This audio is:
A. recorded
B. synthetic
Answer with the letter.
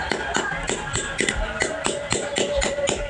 A